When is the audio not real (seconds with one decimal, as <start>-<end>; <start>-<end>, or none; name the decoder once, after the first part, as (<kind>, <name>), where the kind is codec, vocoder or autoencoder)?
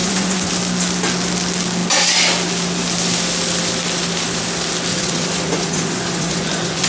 0.0-0.5 (vocoder, Vocos); 4.9-6.9